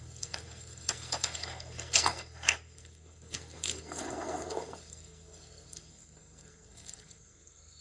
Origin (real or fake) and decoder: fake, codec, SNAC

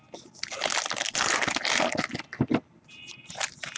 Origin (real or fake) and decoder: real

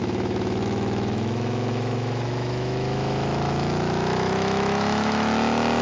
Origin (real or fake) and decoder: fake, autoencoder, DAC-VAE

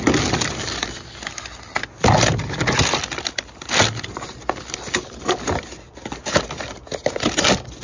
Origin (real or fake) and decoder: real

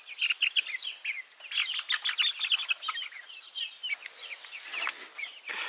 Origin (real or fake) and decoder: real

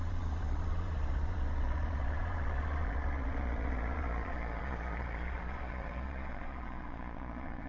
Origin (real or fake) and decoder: fake, vocoder, Vocos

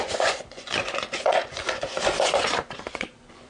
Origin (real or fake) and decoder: fake, vocoder, Vocos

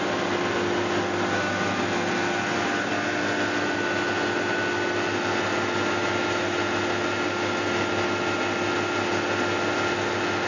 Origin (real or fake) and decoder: real